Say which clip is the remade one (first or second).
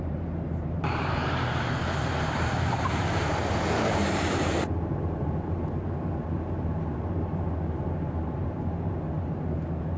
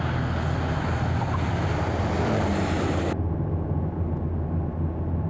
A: first